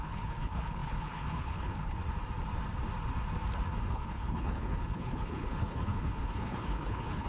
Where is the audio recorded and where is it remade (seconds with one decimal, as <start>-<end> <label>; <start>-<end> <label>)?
0.0-2.0 remade; 2.0-3.9 recorded; 3.9-7.3 remade